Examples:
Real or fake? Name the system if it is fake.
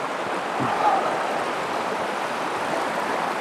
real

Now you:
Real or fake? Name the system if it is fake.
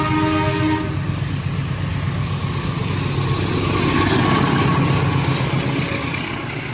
real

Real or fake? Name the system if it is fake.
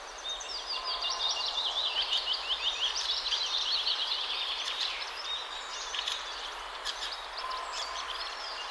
fake, vocoder, BigVGAN v2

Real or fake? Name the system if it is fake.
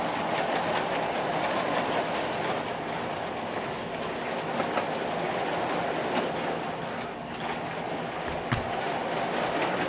real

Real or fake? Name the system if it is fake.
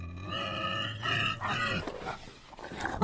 real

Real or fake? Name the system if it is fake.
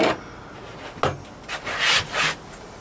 real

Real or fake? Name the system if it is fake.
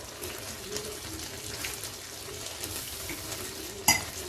real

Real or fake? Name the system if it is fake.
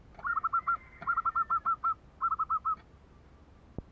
real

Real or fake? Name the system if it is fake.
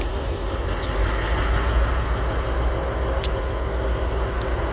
real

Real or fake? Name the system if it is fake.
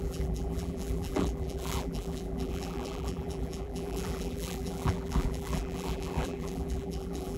fake, vocoder, BigVGAN v2